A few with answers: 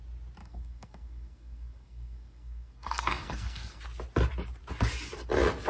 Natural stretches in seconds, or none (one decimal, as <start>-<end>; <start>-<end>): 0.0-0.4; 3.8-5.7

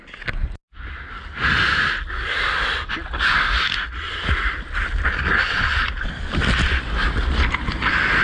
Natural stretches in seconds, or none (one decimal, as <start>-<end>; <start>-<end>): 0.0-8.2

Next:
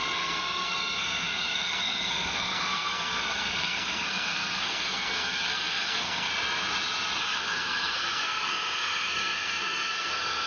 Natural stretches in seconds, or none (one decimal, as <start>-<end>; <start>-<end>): 6.3-7.2

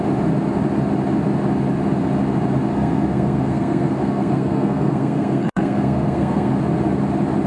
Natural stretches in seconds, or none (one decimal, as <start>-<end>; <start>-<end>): 0.0-2.7; 6.5-7.5

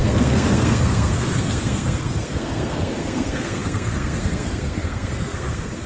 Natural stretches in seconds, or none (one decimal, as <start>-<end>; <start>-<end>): none